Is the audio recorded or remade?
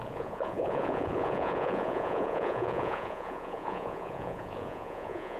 remade